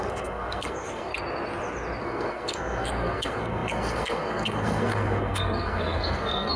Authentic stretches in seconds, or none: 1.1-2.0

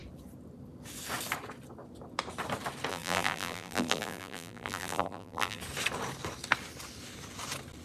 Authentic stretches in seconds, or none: 0.0-2.9; 5.6-7.8

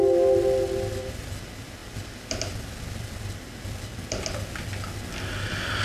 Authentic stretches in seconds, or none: 0.0-5.8

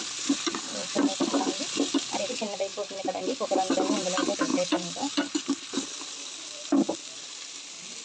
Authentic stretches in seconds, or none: 0.0-8.0

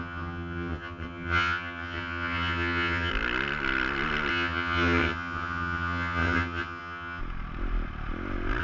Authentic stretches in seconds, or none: 3.1-4.3; 7.2-8.6